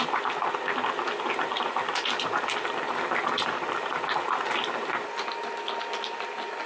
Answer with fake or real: real